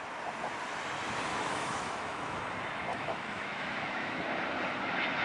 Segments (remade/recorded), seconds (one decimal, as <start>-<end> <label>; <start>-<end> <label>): 0.0-1.3 recorded; 1.3-2.4 remade; 2.4-2.9 recorded; 2.9-4.1 remade; 4.1-5.2 recorded